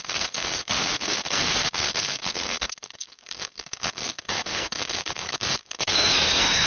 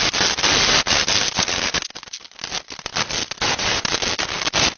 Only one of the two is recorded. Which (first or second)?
second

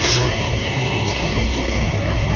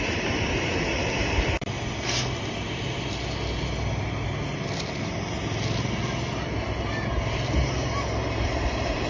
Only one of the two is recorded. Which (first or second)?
second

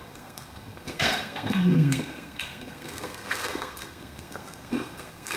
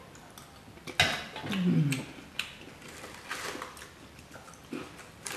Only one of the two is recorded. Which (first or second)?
second